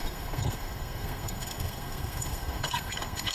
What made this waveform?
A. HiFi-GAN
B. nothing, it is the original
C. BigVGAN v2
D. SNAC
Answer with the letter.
D